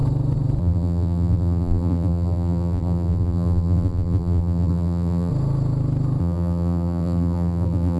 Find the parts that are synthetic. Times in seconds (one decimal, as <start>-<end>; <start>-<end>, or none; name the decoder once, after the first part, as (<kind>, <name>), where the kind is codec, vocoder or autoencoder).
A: 0.6-5.3 (vocoder, BigVGAN v2); 6.2-8.0